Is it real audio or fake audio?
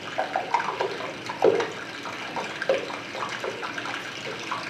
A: real